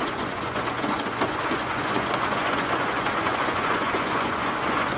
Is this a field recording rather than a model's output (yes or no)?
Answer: no